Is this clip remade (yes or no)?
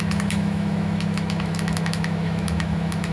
yes